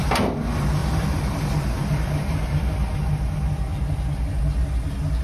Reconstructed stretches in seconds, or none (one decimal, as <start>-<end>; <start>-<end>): 0.8-2.6